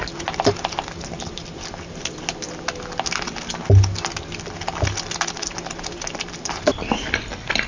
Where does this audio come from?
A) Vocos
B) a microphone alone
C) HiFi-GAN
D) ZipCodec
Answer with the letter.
B